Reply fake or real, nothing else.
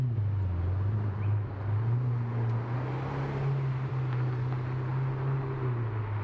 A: real